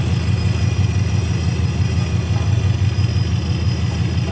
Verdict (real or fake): real